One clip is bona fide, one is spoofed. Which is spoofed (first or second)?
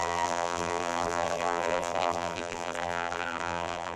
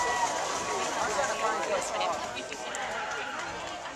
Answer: first